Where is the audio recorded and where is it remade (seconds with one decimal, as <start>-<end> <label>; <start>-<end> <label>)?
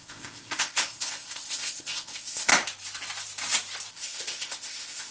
0.0-2.5 remade; 2.5-3.9 recorded; 3.9-5.1 remade